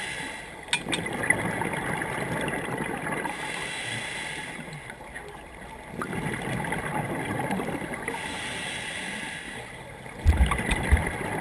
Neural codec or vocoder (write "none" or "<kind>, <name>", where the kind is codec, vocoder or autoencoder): none